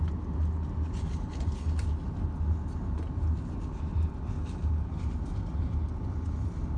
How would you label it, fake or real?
real